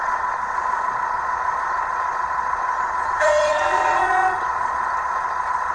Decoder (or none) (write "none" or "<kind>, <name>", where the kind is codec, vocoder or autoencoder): vocoder, Vocos